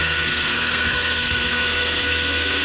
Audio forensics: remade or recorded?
remade